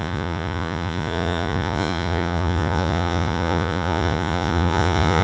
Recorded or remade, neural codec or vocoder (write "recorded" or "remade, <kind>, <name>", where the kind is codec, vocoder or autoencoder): remade, vocoder, Vocos